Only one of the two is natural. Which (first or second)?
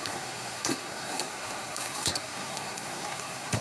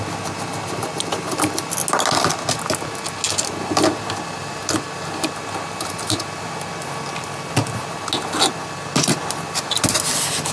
second